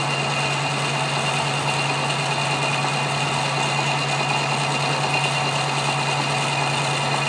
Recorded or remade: recorded